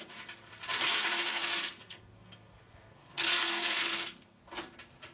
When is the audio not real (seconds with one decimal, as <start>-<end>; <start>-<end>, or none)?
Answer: 1.3-4.4